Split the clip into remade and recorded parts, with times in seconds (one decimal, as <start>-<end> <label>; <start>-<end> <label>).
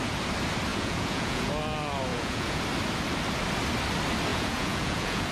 0.0-0.7 recorded; 0.7-1.5 remade; 1.5-2.1 recorded; 2.1-2.6 remade; 2.6-4.3 recorded; 4.3-5.3 remade